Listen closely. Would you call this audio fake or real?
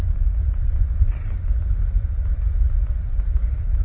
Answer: real